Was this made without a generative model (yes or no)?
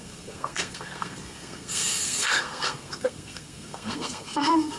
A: no